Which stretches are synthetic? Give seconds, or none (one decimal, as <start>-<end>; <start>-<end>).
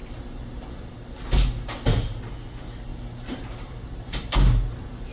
0.0-0.9; 2.9-5.1